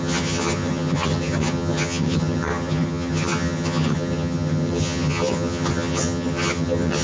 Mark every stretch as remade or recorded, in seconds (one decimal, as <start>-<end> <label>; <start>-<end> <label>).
0.0-7.0 remade